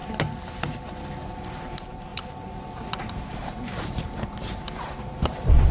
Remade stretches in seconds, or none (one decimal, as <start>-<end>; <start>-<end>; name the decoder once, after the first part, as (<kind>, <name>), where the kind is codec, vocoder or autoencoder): 1.4-2.1 (vocoder, BigVGAN v2); 3.0-5.7